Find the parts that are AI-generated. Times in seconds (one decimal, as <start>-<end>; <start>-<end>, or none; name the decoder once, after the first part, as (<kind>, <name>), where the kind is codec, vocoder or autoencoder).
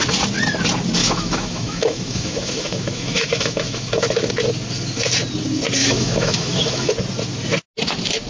1.0-4.3 (autoencoder, DAC-VAE); 5.8-6.9